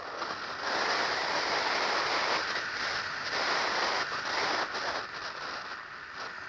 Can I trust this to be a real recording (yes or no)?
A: yes